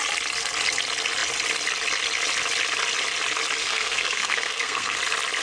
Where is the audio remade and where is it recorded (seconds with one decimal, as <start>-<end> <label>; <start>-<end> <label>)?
0.0-3.6 recorded; 3.6-5.0 remade; 5.0-5.4 recorded